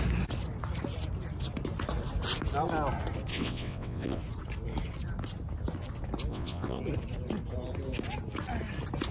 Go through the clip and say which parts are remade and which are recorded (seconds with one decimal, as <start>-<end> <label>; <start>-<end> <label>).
0.0-3.3 recorded; 3.3-4.2 remade; 4.2-6.3 recorded; 6.3-6.8 remade; 6.8-9.1 recorded